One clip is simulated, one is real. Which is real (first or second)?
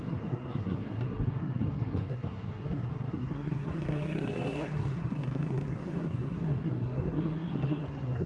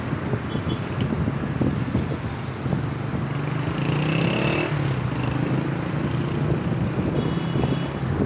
second